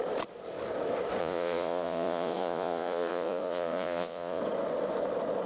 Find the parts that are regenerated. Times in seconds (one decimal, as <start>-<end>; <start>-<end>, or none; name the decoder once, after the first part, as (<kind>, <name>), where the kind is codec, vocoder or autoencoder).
1.2-4.4 (vocoder, Vocos)